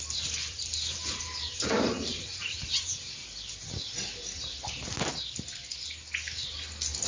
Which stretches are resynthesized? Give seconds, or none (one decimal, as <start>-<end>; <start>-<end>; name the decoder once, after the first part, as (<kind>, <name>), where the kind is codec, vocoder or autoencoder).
0.4-2.7 (vocoder, BigVGAN v2)